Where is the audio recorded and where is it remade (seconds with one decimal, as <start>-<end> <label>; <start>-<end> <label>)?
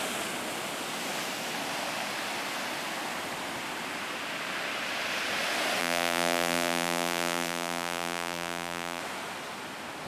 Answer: 0.0-5.8 recorded; 5.8-9.0 remade; 9.0-10.1 recorded